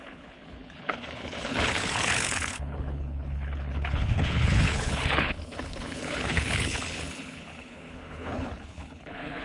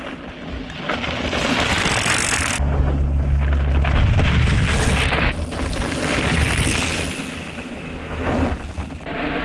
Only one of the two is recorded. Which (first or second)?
second